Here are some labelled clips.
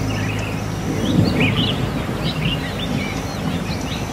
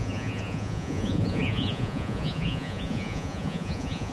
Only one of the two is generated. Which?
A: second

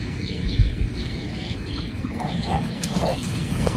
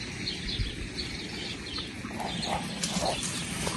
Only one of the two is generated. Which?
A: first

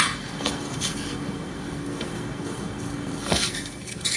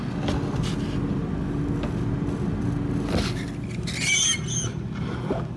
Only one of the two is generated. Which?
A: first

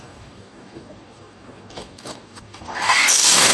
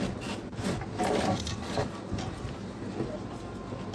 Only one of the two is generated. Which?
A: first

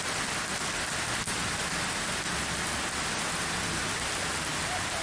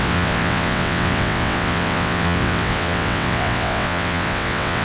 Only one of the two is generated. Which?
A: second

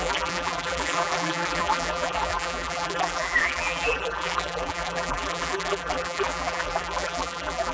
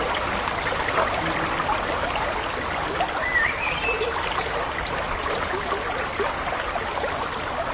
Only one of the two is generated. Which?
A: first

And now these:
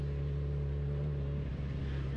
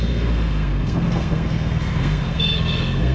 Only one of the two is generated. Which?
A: second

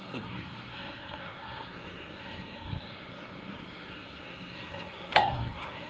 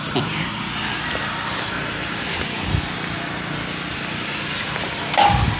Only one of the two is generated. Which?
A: first